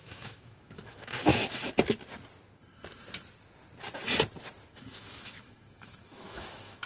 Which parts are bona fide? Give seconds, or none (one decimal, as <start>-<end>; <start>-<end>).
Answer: 1.3-4.7